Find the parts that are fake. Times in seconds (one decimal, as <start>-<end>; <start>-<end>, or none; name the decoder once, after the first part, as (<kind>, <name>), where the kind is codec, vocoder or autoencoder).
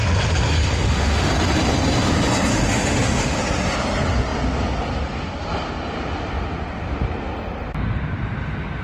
0.6-1.3 (autoencoder, DAC-VAE); 2.5-3.4